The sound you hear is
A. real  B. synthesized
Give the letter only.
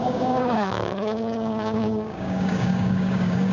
B